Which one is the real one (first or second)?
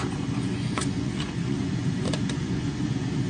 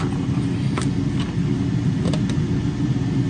second